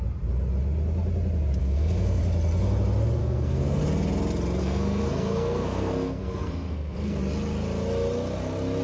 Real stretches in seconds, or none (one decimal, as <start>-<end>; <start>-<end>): 0.0-1.6; 2.2-3.2; 3.8-4.6; 7.2-8.8